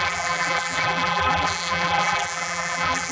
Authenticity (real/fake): fake